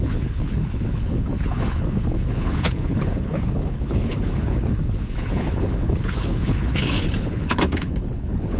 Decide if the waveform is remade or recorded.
remade